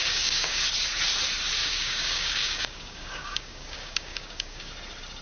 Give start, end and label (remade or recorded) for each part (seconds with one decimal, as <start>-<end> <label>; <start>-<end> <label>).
0.0-0.6 remade; 0.6-1.6 recorded; 1.6-4.7 remade; 4.7-5.2 recorded